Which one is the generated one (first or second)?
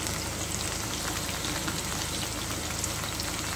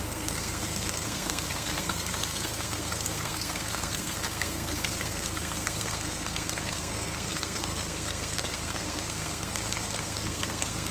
second